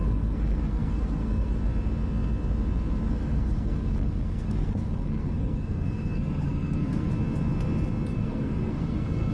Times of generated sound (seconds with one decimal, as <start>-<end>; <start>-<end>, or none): 0.0-1.5; 3.1-7.1; 8.1-9.3